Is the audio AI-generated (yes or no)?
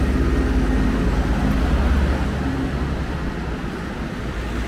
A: no